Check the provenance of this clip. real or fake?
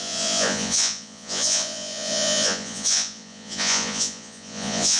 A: fake